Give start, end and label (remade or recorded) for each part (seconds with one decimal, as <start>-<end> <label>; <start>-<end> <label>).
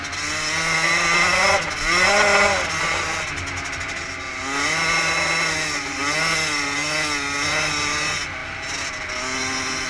0.0-9.9 recorded